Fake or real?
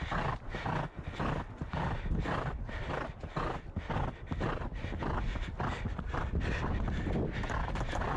real